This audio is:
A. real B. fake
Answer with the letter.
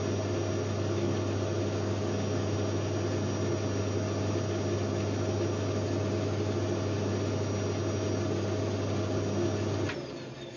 A